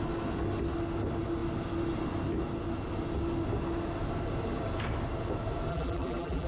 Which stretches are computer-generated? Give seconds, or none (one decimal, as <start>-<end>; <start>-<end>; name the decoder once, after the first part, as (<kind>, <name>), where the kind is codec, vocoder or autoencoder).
5.7-6.5 (vocoder, BigVGAN v2)